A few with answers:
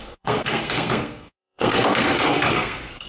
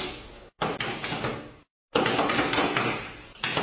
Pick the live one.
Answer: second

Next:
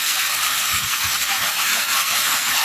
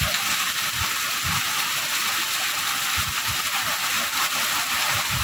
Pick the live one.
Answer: second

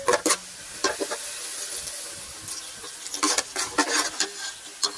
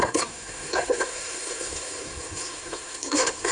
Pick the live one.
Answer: first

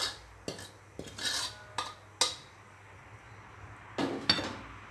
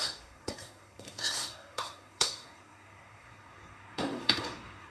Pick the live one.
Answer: first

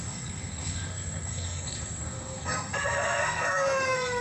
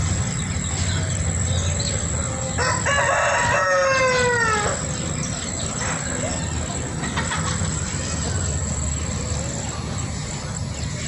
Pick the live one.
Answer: second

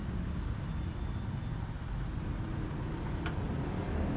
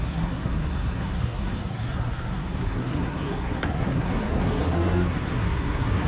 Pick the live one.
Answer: first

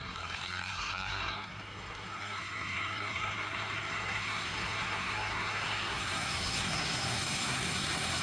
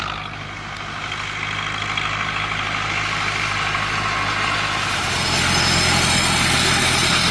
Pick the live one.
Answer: second